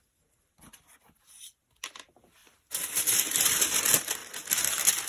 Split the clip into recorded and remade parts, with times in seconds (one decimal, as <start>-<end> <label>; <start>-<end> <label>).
0.0-2.4 recorded; 2.4-3.6 remade; 3.6-4.2 recorded; 4.2-5.1 remade